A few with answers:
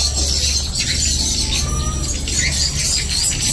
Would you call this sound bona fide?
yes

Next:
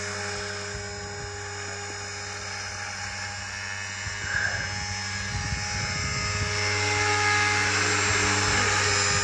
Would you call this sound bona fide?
yes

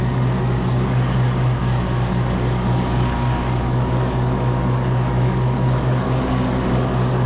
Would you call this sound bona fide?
no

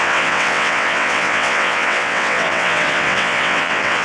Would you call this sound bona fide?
no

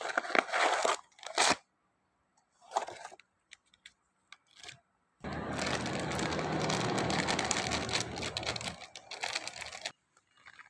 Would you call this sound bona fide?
yes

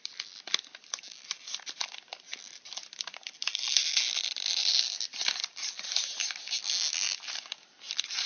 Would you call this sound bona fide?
yes